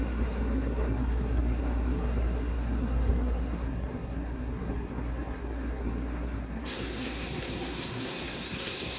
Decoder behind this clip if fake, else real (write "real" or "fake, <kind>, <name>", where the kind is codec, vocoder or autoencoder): fake, codec, SNAC